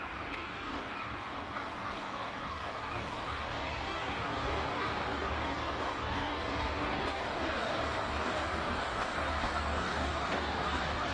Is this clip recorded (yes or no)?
no